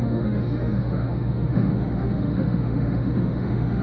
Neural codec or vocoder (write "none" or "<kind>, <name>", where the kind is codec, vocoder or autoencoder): autoencoder, DAC-VAE